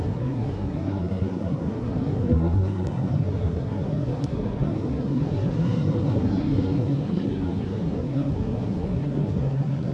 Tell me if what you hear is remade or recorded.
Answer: remade